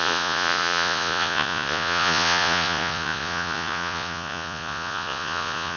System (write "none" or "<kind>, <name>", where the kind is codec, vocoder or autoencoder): vocoder, Vocos